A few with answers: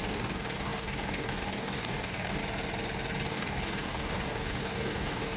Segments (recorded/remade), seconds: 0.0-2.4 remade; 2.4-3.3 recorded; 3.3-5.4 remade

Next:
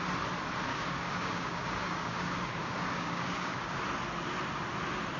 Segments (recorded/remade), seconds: 0.0-0.7 recorded; 0.7-3.8 remade; 3.8-5.2 recorded

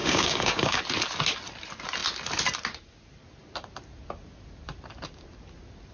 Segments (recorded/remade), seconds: 0.0-0.8 remade; 0.8-5.9 recorded